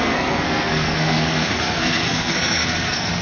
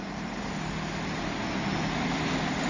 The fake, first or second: first